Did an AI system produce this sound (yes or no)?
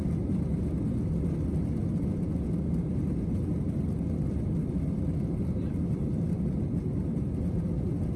yes